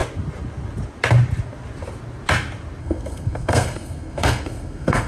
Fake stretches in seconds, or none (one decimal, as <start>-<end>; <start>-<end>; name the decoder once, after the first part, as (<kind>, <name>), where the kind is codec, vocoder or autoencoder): 2.8-5.1 (codec, SNAC)